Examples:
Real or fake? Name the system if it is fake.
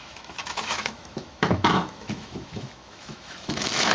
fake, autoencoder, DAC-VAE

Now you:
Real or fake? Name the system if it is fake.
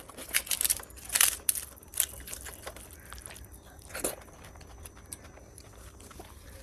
fake, vocoder, BigVGAN v2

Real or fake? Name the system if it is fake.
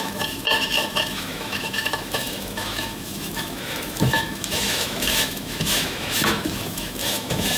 fake, autoencoder, DAC-VAE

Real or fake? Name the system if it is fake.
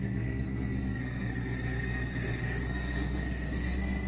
fake, codec, SNAC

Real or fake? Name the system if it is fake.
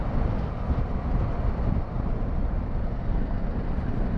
real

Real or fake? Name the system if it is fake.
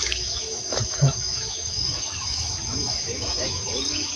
fake, autoencoder, DAC-VAE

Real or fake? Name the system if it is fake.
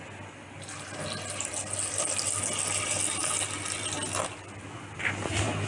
real